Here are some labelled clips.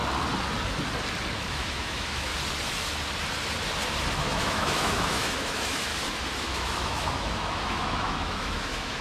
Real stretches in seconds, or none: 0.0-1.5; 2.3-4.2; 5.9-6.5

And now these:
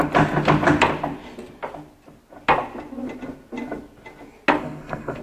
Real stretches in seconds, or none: 0.0-4.6